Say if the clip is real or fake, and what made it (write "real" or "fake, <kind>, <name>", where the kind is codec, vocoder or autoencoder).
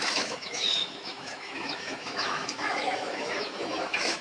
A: fake, autoencoder, DAC-VAE